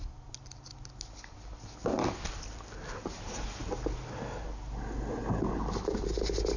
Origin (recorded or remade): recorded